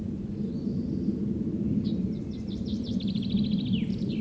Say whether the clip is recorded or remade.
remade